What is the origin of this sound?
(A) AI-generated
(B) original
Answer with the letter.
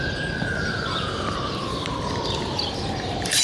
A